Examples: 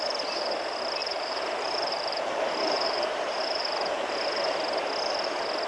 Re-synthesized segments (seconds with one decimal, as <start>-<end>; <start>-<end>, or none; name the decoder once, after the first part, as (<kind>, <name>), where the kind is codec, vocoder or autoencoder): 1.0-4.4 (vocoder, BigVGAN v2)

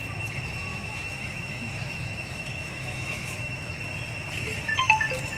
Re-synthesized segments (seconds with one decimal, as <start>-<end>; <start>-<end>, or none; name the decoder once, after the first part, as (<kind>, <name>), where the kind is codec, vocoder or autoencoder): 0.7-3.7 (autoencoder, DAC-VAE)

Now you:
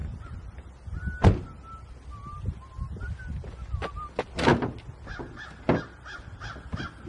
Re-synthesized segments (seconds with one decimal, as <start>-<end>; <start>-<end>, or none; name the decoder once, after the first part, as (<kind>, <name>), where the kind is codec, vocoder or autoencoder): none